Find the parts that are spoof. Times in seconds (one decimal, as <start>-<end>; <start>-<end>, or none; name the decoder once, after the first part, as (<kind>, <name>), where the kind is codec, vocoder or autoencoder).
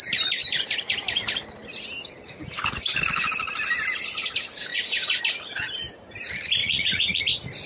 4.7-5.2 (vocoder, Vocos); 6.6-7.2